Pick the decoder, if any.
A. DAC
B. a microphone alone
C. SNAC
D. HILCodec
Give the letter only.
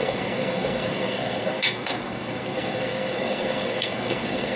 C